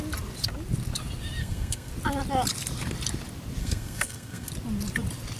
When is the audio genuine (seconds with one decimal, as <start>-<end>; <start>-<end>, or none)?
0.0-1.4; 1.9-3.6; 4.5-5.4